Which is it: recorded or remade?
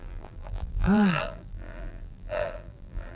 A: remade